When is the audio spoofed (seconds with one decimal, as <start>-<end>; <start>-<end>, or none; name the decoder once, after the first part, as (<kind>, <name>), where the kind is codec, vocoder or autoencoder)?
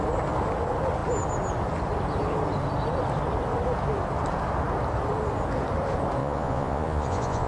6.2-7.5 (vocoder, Vocos)